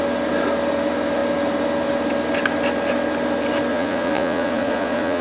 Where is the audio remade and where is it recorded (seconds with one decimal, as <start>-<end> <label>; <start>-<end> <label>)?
0.0-3.7 recorded; 3.7-5.2 remade